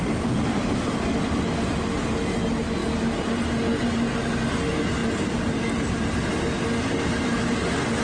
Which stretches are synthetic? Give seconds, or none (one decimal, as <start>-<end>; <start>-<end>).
none